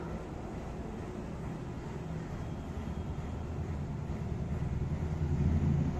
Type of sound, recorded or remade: recorded